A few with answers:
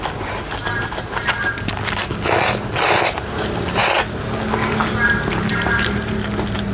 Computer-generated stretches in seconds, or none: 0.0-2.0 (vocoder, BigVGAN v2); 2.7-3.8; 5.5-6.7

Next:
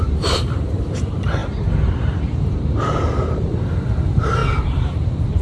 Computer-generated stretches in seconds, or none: 0.0-4.4 (vocoder, BigVGAN v2)

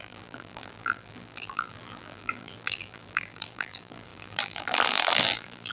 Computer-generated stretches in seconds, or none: 0.0-5.7 (vocoder, BigVGAN v2)

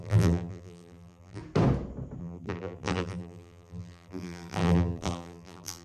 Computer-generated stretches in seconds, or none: 0.0-1.4 (vocoder, BigVGAN v2); 2.2-5.8

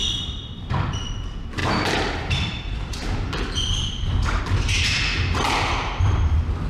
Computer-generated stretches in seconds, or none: 1.6-4.4 (vocoder, BigVGAN v2)

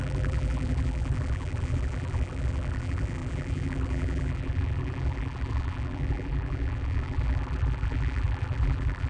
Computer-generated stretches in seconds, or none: 0.0-9.1 (vocoder, BigVGAN v2)